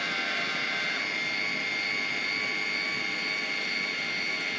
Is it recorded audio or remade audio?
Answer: recorded